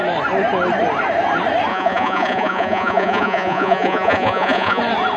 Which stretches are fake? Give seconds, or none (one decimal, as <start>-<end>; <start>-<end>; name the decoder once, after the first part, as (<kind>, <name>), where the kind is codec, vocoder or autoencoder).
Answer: 1.7-4.8 (vocoder, Vocos)